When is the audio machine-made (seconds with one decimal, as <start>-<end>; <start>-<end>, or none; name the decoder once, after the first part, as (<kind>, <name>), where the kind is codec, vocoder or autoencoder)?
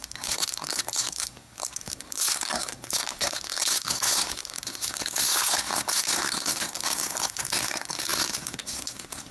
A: 0.0-9.3 (codec, SNAC)